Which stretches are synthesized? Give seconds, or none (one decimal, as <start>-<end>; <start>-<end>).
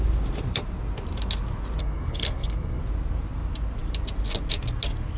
1.8-2.8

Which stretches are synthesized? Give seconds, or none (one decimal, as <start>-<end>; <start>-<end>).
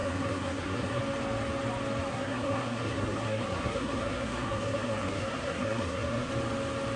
0.0-1.0; 2.1-6.3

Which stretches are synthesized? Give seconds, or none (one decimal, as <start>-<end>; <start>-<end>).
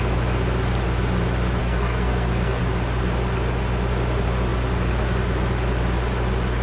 1.6-2.6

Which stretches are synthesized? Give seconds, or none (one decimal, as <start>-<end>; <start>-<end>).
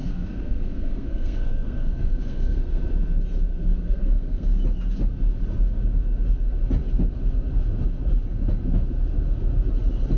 0.0-2.8; 3.5-4.6